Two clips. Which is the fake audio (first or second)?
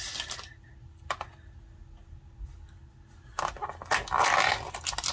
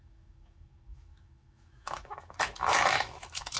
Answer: second